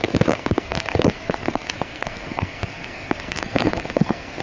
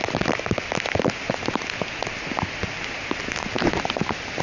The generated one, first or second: first